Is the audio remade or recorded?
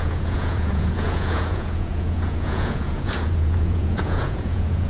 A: remade